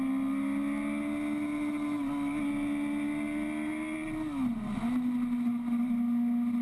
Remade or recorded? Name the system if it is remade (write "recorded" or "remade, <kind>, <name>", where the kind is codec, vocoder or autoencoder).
recorded